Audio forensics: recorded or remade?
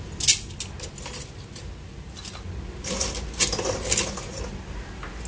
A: recorded